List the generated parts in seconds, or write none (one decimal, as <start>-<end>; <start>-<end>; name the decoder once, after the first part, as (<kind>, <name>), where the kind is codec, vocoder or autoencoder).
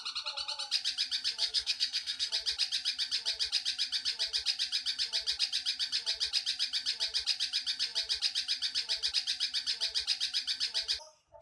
1.4-2.3 (codec, SNAC)